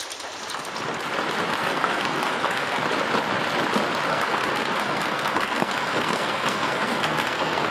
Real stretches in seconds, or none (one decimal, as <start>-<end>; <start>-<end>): 0.0-1.6; 2.8-4.1